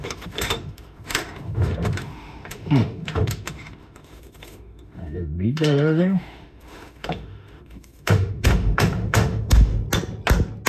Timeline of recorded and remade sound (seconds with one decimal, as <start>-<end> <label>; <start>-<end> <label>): 0.0-9.7 remade; 9.7-10.7 recorded